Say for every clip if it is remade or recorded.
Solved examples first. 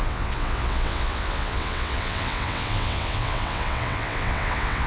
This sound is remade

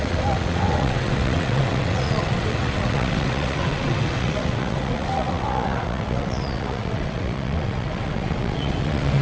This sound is remade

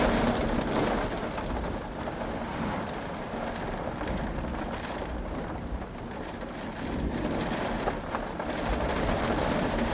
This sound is recorded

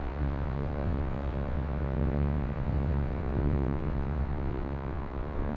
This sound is remade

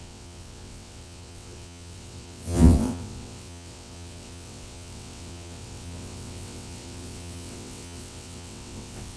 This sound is remade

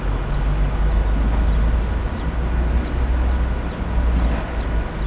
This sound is recorded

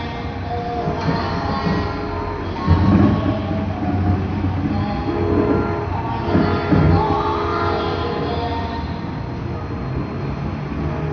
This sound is recorded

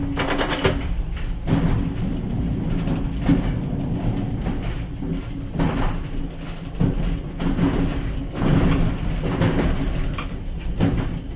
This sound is recorded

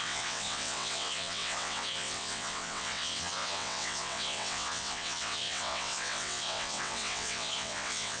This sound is remade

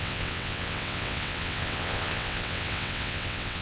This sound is remade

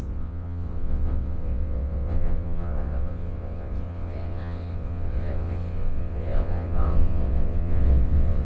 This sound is remade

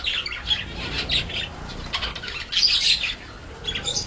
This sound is recorded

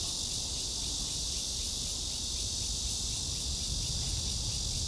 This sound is recorded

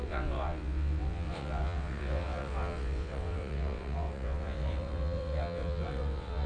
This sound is remade